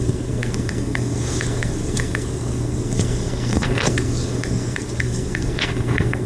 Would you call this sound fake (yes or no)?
yes